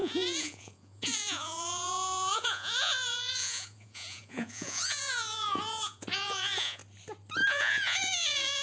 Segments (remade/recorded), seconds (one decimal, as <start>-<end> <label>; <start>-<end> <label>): 0.0-6.8 remade; 6.8-7.5 recorded; 7.5-8.6 remade